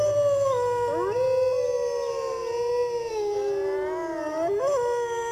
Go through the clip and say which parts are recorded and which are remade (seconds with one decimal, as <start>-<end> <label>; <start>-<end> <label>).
0.0-5.3 recorded